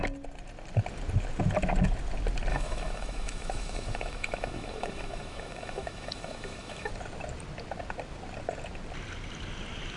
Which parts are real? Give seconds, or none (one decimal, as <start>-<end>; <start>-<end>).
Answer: 0.0-2.5; 6.9-10.0